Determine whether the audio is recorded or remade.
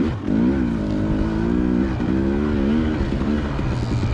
recorded